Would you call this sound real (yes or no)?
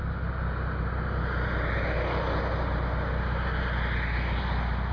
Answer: yes